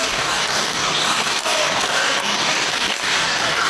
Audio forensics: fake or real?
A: fake